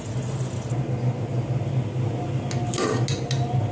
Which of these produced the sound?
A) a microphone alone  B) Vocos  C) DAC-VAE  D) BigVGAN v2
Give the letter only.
A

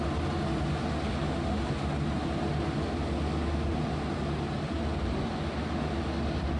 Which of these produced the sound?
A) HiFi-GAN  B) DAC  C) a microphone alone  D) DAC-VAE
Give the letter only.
C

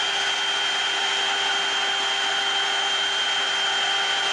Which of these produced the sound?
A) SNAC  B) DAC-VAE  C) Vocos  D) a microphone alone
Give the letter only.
D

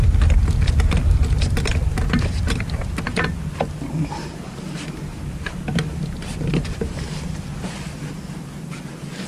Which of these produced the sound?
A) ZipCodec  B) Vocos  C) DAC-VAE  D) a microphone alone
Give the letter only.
D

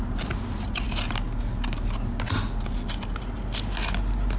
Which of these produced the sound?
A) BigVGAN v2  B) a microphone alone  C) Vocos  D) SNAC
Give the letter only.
B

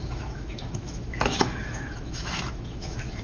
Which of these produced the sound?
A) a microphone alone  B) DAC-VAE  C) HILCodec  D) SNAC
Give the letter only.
B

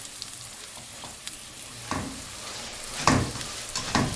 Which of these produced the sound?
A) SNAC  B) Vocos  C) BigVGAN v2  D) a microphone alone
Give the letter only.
C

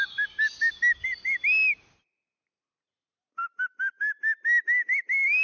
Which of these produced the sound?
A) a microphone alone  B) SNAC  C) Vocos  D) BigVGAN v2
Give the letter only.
A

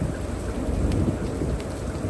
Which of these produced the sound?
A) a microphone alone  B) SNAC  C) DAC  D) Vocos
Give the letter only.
A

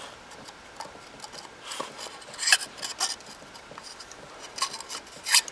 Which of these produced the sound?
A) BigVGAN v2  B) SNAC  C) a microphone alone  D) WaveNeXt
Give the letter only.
C